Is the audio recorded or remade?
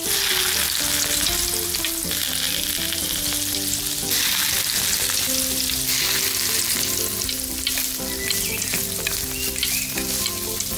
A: recorded